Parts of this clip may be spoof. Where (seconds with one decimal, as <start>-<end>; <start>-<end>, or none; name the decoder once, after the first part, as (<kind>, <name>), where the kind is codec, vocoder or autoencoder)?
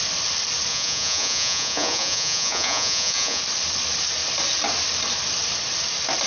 0.7-3.4 (vocoder, Vocos)